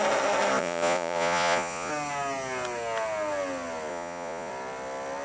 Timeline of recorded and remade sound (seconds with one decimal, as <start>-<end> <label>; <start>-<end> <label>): 0.0-0.6 recorded; 0.6-1.9 remade; 1.9-3.9 recorded; 3.9-4.5 remade; 4.5-5.2 recorded